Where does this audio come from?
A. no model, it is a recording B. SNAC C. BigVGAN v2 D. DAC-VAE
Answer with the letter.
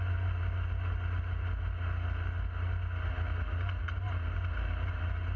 A